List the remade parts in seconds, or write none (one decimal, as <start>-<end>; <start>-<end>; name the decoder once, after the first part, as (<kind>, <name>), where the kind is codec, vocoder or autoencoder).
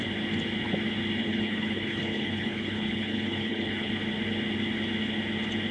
1.2-3.9 (codec, HILCodec)